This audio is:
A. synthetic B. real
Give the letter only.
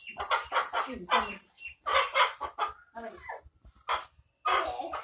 B